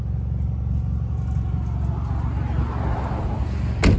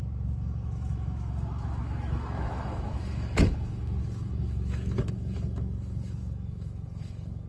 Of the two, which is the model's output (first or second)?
second